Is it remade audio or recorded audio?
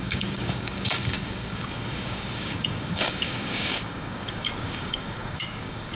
remade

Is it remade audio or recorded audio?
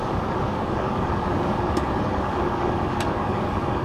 remade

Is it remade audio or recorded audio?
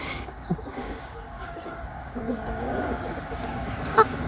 remade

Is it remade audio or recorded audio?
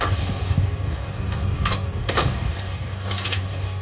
remade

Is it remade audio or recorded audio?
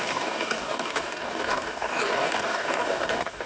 remade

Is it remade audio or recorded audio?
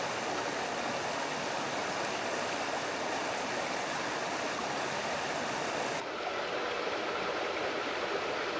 recorded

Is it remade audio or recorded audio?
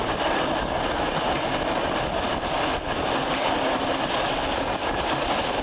recorded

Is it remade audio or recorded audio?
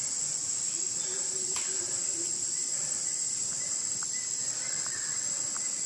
recorded